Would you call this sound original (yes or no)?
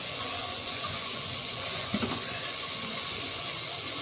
no